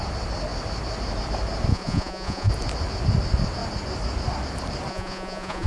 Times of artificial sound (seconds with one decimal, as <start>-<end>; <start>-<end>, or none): 1.7-2.5; 4.9-5.7